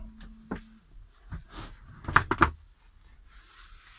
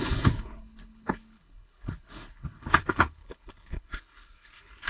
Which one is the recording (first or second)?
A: first